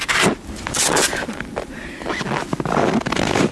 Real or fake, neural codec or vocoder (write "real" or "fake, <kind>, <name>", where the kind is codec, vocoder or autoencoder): real